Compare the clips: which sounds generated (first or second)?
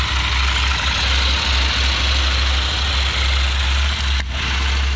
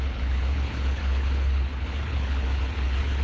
second